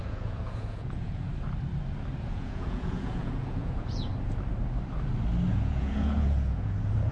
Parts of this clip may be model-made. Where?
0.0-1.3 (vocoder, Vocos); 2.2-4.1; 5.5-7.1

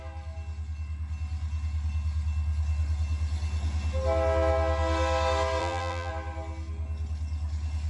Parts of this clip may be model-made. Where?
5.6-6.1 (vocoder, BigVGAN v2)

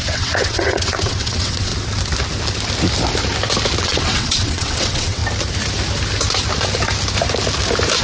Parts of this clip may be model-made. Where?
0.0-1.7 (vocoder, WaveNeXt); 3.8-5.2

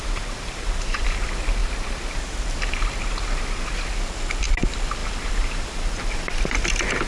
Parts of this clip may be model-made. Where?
0.0-1.0 (vocoder, BigVGAN v2); 5.0-6.2